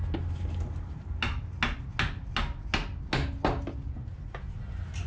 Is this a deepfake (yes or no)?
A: no